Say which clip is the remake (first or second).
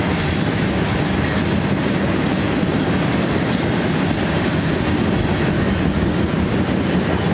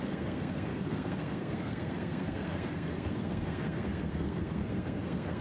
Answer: second